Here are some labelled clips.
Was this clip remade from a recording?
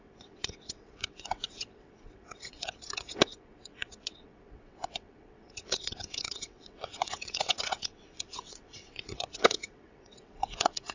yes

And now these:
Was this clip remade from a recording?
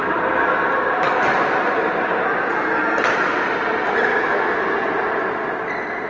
no